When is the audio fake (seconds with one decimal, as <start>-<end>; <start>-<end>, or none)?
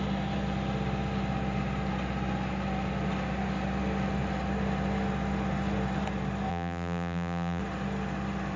6.5-7.6